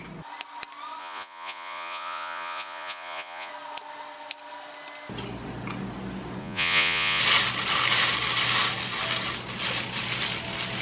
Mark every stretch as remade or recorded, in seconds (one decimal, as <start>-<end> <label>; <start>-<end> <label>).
0.0-1.0 recorded; 1.0-3.5 remade; 3.5-6.4 recorded; 6.4-7.2 remade; 7.2-10.8 recorded

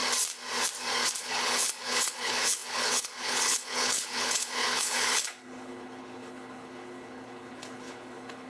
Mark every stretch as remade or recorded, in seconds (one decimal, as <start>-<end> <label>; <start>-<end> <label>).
0.0-1.2 recorded; 1.2-8.5 remade

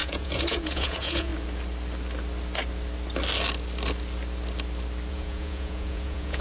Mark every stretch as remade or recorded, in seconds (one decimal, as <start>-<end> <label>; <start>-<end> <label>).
0.0-1.3 remade; 1.3-5.1 recorded; 5.1-6.4 remade